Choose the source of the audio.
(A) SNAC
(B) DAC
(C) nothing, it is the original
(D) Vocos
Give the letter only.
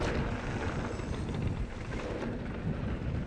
C